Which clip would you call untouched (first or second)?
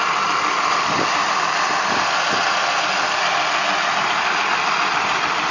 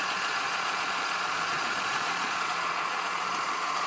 first